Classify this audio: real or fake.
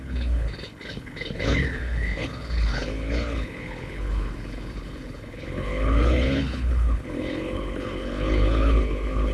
fake